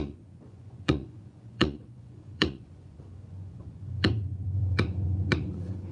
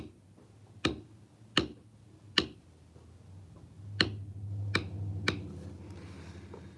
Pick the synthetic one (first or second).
first